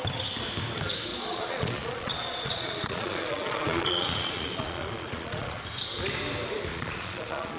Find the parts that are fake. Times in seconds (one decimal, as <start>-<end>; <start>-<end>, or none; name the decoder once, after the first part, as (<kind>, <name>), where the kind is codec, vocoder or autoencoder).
1.1-5.6 (vocoder, Vocos); 6.7-7.6